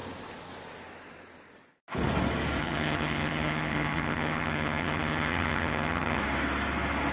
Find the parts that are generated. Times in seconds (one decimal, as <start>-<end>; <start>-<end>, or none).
2.6-6.2